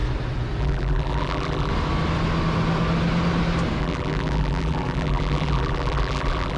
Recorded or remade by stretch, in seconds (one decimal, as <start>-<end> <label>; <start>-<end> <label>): 0.0-0.6 recorded; 0.6-1.7 remade; 1.7-3.8 recorded; 3.8-6.6 remade